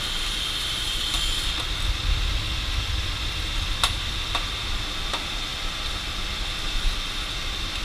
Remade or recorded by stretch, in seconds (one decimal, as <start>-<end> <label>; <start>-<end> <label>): 0.0-7.8 recorded